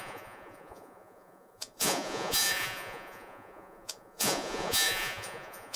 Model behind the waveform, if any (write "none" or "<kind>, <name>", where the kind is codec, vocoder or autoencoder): vocoder, Vocos